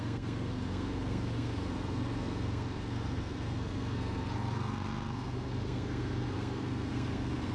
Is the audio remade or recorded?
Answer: remade